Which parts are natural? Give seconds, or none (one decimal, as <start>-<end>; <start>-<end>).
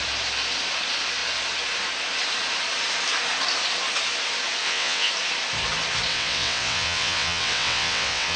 0.0-4.6; 5.1-6.1